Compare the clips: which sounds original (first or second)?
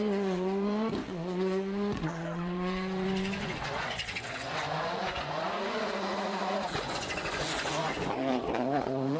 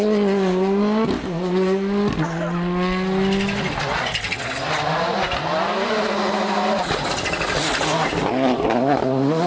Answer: second